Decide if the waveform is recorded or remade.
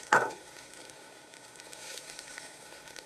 remade